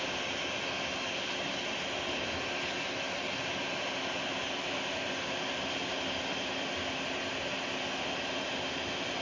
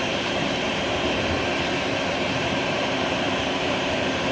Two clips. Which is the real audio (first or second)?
first